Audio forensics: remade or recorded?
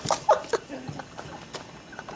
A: recorded